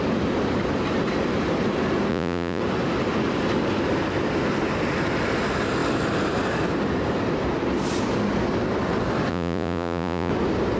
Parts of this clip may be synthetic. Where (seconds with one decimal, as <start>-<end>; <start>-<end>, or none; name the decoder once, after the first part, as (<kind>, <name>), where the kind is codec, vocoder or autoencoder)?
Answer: 2.1-2.6 (vocoder, Vocos); 9.3-10.3